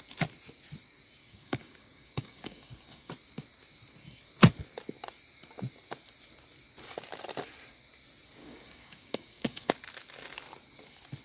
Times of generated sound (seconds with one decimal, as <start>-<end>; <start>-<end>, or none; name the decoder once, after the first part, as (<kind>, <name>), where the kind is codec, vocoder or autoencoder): 1.2-3.1 (codec, DAC); 8.4-9.7